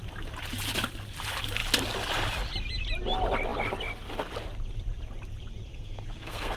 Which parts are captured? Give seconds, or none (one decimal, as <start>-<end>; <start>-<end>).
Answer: 0.0-5.7